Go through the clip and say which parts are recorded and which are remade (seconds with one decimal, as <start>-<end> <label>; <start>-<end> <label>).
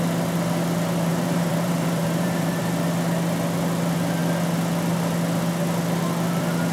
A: 0.0-1.1 recorded; 1.1-2.6 remade; 2.6-6.7 recorded